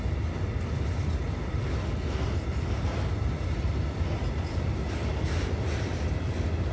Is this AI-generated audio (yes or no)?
no